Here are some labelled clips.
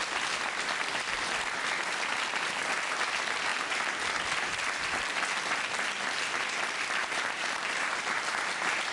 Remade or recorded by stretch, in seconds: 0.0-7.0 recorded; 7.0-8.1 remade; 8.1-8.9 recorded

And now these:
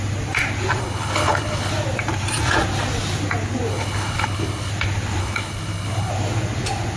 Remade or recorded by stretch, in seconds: 0.0-0.8 recorded; 0.8-1.7 remade; 1.7-3.7 recorded; 3.7-4.7 remade; 4.7-5.2 recorded; 5.2-6.1 remade; 6.1-7.0 recorded

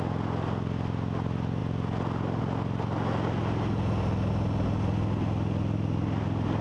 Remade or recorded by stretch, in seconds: 0.0-6.6 recorded

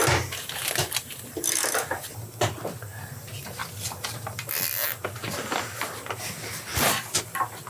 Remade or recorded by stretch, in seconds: 0.0-7.7 recorded

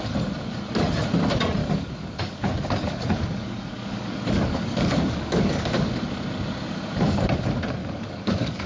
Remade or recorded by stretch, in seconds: 0.0-1.6 recorded; 1.6-5.9 remade; 5.9-7.8 recorded; 7.8-8.7 remade

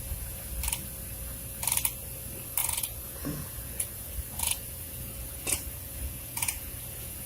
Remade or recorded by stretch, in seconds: 0.0-2.6 recorded; 2.6-7.3 remade